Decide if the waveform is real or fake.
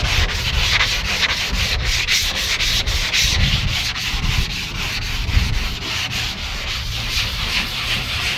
fake